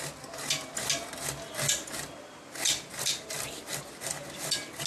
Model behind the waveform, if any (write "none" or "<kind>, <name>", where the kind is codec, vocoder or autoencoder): none